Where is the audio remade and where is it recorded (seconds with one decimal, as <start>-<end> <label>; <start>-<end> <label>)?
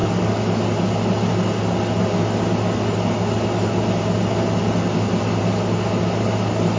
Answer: 0.0-6.8 recorded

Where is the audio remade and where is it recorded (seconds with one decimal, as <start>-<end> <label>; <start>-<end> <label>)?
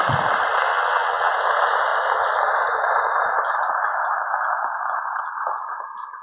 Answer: 0.0-0.7 recorded; 0.7-1.3 remade; 1.3-6.2 recorded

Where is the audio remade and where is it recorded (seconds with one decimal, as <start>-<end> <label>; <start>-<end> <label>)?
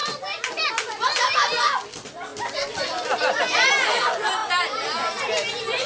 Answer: 0.0-5.9 recorded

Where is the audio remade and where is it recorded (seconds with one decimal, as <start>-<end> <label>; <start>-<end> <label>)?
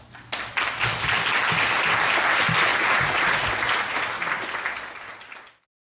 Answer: 0.0-2.7 recorded; 2.7-3.5 remade; 3.5-5.9 recorded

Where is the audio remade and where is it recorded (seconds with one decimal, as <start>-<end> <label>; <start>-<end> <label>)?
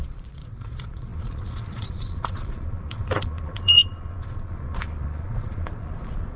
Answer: 0.0-6.4 remade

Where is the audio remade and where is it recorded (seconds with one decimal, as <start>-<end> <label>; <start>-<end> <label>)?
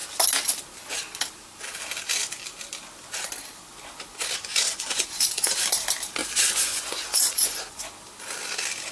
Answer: 0.0-4.4 recorded; 4.4-5.6 remade; 5.6-6.2 recorded; 6.2-7.8 remade; 7.8-8.9 recorded